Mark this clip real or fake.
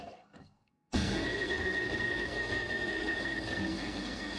fake